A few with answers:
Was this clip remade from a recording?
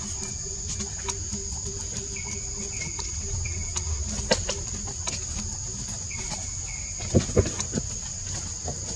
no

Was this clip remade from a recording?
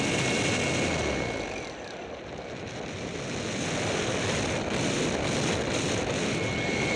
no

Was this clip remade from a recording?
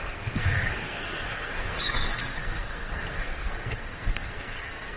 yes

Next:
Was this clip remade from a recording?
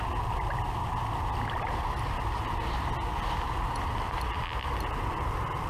no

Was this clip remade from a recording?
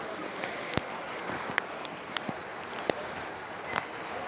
no